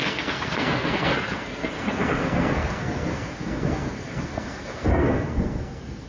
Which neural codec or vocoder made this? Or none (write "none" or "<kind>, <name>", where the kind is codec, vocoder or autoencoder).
codec, SNAC